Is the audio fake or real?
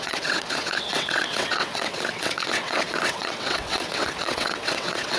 fake